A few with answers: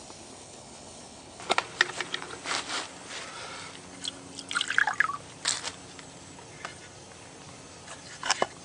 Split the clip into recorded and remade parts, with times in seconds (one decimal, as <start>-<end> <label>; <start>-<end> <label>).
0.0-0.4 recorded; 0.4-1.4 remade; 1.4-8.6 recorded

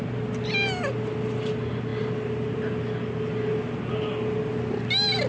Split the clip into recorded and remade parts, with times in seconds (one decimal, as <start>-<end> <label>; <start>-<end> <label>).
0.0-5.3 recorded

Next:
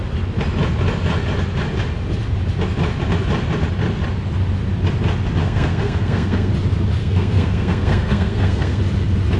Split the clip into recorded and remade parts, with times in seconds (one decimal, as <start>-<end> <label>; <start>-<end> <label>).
0.0-5.4 recorded; 5.4-6.5 remade; 6.5-7.0 recorded; 7.0-8.8 remade; 8.8-9.4 recorded